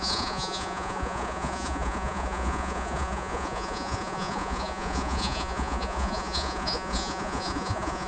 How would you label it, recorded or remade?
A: remade